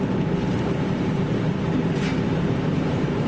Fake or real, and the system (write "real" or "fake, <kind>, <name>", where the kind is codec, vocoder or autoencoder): fake, vocoder, BigVGAN v2